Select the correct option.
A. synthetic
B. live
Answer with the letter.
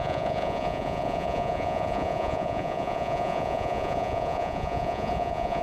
A